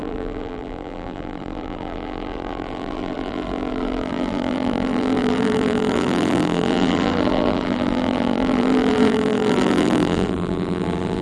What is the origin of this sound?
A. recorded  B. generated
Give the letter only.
B